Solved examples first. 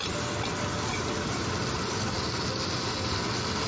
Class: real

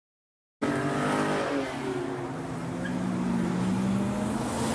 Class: real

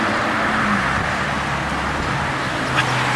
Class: real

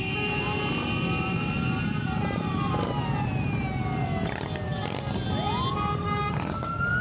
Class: real